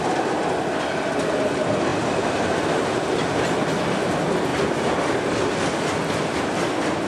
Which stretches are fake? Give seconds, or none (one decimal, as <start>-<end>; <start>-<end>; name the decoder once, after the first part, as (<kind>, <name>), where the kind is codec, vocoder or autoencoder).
none